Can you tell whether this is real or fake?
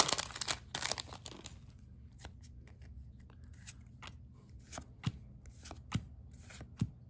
real